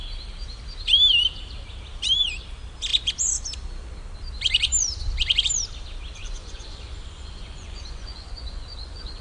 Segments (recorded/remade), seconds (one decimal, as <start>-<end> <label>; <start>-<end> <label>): 0.0-6.2 recorded; 6.2-9.2 remade

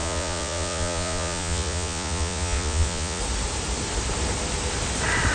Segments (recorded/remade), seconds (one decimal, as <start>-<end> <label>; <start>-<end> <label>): 0.0-3.2 remade; 3.2-5.3 recorded

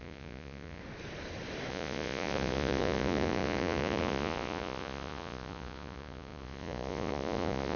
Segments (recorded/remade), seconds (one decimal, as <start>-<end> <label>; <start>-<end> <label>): 0.0-0.8 remade; 0.8-1.7 recorded; 1.7-7.8 remade

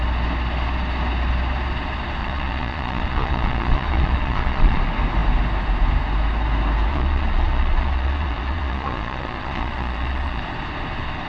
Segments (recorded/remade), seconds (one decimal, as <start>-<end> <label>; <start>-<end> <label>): 0.0-2.2 recorded; 2.2-4.8 remade; 4.8-6.9 recorded; 6.9-10.4 remade; 10.4-11.3 recorded